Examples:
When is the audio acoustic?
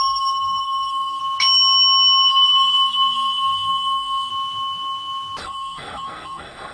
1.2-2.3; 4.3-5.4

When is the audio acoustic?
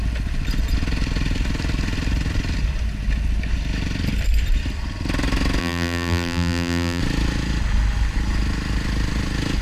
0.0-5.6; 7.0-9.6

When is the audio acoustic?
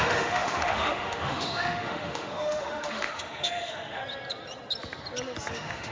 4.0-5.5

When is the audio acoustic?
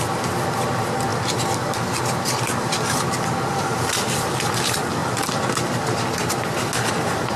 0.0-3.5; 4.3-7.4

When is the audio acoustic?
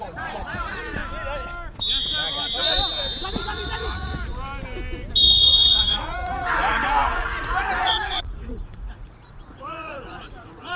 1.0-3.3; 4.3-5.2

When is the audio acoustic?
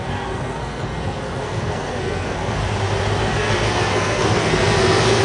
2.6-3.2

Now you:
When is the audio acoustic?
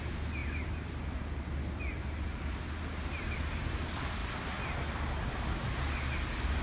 0.0-6.6